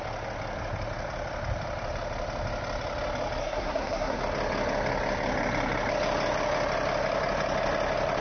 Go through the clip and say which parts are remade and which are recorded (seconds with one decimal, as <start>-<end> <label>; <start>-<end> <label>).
0.0-3.4 recorded; 3.4-4.2 remade; 4.2-8.2 recorded

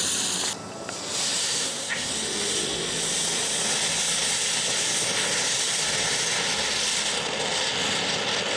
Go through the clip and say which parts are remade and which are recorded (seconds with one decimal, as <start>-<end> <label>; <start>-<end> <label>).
0.0-1.4 recorded; 1.4-2.1 remade; 2.1-8.6 recorded

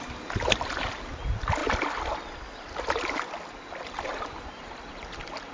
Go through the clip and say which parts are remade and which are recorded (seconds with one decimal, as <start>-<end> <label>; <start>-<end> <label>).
0.0-5.5 recorded

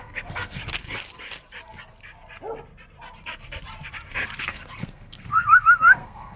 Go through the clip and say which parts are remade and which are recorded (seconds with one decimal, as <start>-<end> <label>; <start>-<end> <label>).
0.0-0.6 remade; 0.6-4.4 recorded; 4.4-6.4 remade

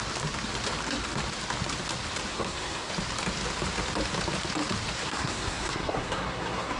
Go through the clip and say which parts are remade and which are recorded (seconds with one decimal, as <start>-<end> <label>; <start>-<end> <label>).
0.0-2.3 recorded; 2.3-2.9 remade; 2.9-5.0 recorded; 5.0-6.8 remade